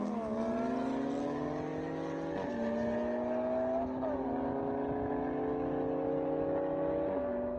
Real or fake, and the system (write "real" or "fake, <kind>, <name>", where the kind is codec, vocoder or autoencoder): real